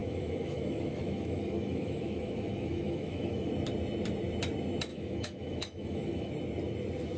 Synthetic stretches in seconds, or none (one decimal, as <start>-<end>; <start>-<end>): 0.0-3.5; 4.9-6.3